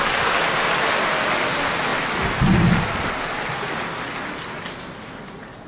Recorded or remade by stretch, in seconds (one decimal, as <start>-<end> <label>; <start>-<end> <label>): 0.0-5.7 recorded